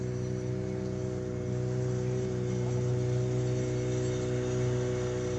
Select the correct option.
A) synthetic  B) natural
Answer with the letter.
B